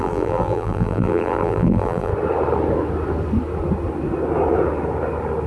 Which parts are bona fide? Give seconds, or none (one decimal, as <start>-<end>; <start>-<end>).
2.1-5.5